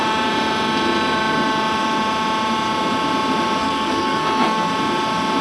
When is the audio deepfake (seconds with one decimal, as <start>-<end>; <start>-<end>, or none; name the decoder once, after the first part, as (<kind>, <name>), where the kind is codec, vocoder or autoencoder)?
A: 3.6-4.7 (codec, SNAC)